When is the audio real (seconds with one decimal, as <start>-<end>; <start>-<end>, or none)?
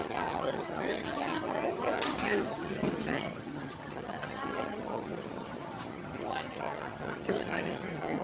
none